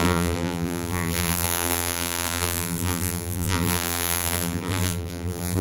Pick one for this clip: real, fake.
fake